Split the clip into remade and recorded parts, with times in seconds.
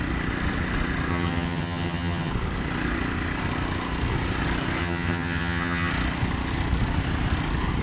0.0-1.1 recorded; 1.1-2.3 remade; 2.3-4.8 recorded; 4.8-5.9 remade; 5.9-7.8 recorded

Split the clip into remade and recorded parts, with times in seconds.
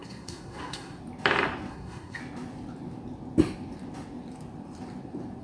0.0-1.0 remade; 1.0-1.7 recorded; 1.7-2.2 remade; 2.2-5.4 recorded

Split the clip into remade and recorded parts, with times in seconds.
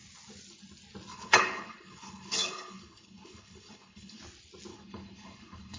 0.0-1.1 recorded; 1.1-4.2 remade; 4.2-4.7 recorded; 4.7-5.8 remade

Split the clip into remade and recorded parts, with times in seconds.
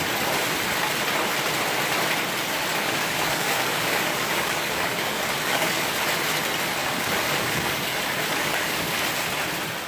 0.0-2.7 recorded; 2.7-5.9 remade; 5.9-6.8 recorded; 6.8-9.0 remade; 9.0-9.9 recorded